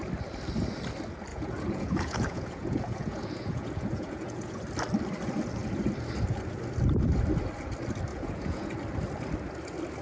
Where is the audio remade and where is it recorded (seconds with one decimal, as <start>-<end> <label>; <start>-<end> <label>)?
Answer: 0.0-1.3 recorded; 1.3-4.6 remade; 4.6-8.1 recorded; 8.1-8.7 remade; 8.7-10.0 recorded